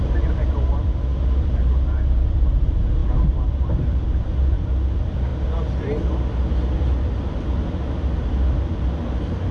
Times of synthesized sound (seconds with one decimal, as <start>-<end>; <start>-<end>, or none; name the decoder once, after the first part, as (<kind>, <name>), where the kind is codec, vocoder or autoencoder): 3.0-4.6 (vocoder, BigVGAN v2)